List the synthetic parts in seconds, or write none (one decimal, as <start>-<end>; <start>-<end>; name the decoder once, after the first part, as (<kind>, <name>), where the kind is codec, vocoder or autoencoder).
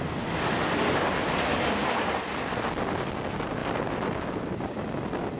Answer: none